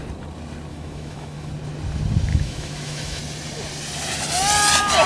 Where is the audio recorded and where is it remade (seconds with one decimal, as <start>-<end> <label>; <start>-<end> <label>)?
0.0-0.7 recorded; 0.7-1.5 remade; 1.5-2.3 recorded; 2.3-3.2 remade; 3.2-5.1 recorded